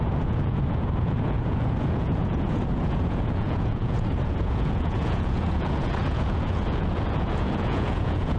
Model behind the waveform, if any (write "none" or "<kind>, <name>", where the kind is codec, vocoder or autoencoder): vocoder, Vocos